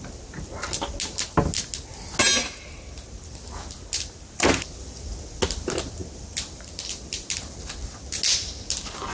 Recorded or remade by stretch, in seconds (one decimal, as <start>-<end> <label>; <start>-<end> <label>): 0.0-9.1 recorded